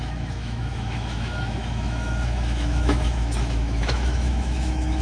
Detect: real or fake fake